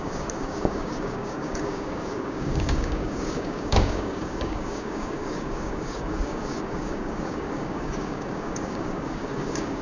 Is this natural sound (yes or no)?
no